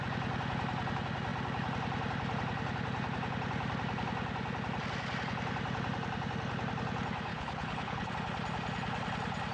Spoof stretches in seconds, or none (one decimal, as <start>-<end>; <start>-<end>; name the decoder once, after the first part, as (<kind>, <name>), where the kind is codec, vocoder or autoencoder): 7.3-8.1 (codec, HILCodec)